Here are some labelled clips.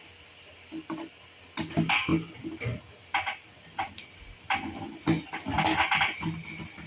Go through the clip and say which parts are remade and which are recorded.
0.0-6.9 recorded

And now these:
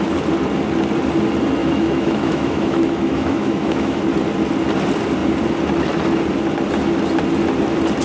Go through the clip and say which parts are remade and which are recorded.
0.0-1.6 recorded; 1.6-4.0 remade; 4.0-8.0 recorded

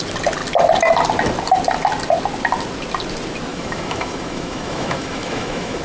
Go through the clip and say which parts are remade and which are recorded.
0.0-3.5 recorded; 3.5-5.8 remade

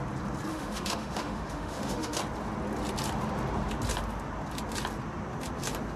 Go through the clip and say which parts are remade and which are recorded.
0.0-0.5 recorded; 0.5-2.2 remade; 2.2-6.0 recorded

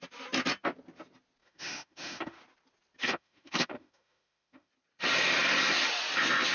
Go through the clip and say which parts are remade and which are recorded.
0.0-1.4 recorded; 1.4-2.4 remade; 2.4-3.0 recorded; 3.0-4.7 remade; 4.7-6.5 recorded